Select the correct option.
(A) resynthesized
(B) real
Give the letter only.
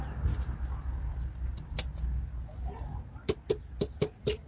B